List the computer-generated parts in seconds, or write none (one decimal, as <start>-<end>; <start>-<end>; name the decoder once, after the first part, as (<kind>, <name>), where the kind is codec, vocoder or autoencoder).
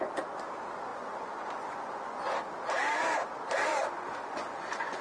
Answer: 0.9-2.2 (vocoder, Vocos); 3.7-5.0